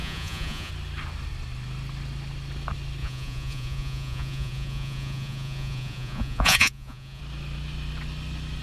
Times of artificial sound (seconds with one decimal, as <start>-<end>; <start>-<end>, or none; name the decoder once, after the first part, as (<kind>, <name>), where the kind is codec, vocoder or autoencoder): 0.0-0.7 (vocoder, Vocos); 3.0-7.2